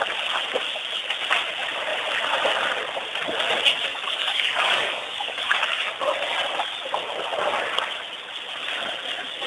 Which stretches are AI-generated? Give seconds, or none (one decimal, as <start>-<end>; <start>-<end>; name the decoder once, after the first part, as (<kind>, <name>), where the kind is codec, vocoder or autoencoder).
3.9-5.9 (codec, DAC)